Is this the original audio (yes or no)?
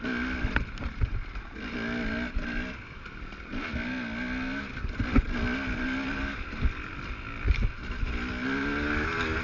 yes